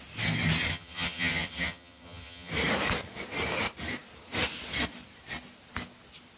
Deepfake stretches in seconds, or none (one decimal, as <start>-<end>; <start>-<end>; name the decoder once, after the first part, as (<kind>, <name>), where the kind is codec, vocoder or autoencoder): 0.7-2.5 (vocoder, HiFi-GAN)